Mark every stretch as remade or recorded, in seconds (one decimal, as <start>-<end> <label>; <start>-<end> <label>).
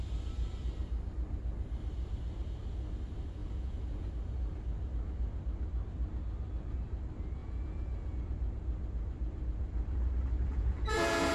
0.0-3.4 recorded; 3.4-4.1 remade; 4.1-7.4 recorded; 7.4-8.2 remade; 8.2-10.5 recorded; 10.5-11.3 remade